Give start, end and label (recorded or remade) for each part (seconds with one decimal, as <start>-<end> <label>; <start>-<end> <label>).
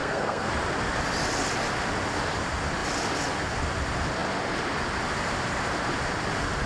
0.0-0.5 remade; 0.5-6.7 recorded